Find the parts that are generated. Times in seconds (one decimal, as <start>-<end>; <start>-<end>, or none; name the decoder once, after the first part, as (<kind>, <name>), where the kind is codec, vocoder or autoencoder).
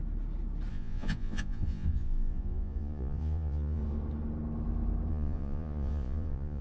0.7-3.8 (vocoder, Vocos); 5.1-6.6